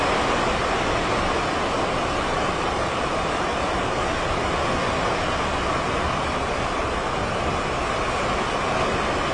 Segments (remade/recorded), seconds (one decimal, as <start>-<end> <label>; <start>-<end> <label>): 0.0-2.3 recorded; 2.3-4.5 remade; 4.5-9.3 recorded